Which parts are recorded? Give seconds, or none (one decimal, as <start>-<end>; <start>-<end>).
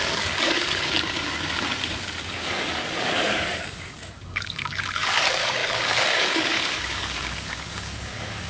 none